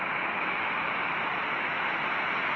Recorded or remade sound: recorded